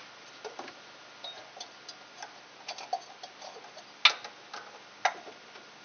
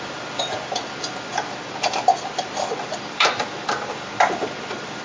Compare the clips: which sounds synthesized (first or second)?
second